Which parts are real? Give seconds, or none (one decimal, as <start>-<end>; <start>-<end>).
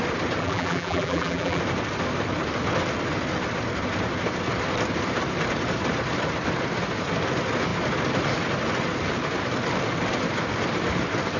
0.0-0.4; 1.6-11.4